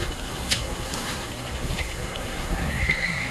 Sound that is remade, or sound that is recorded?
remade